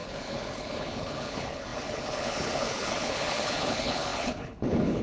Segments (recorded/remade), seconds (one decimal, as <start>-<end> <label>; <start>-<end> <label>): 0.0-5.0 remade